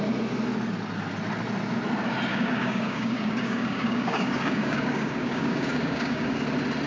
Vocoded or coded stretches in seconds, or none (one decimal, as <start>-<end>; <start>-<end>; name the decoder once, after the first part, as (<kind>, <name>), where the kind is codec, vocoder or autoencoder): 2.3-6.4 (codec, DAC)